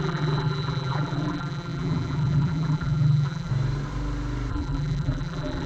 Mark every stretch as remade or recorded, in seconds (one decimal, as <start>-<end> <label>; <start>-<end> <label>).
0.0-3.5 remade; 3.5-4.5 recorded; 4.5-5.7 remade

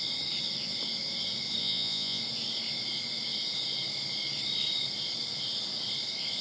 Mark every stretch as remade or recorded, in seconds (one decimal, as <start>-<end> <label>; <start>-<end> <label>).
0.0-1.6 recorded; 1.6-2.2 remade; 2.2-6.4 recorded

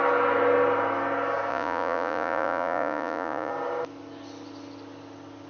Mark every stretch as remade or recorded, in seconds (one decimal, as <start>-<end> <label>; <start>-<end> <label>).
0.0-1.5 recorded; 1.5-3.5 remade; 3.5-5.5 recorded

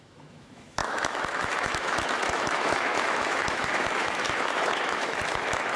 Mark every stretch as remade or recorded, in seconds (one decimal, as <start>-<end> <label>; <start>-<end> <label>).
0.0-5.8 remade

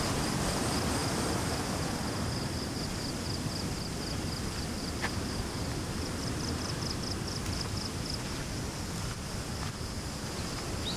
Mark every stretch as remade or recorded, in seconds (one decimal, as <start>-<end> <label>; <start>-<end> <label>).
0.0-11.0 recorded

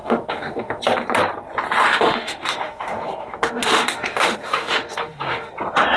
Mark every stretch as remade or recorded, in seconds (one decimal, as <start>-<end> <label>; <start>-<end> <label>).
0.0-0.8 remade; 0.8-1.9 recorded; 1.9-5.5 remade; 5.5-6.0 recorded

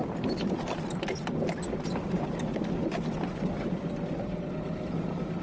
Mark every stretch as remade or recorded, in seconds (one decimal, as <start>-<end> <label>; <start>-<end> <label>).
0.0-5.4 recorded

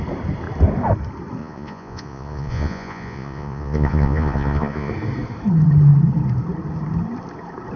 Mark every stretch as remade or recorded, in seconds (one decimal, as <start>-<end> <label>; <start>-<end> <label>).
0.0-1.4 recorded; 1.4-4.9 remade; 4.9-7.8 recorded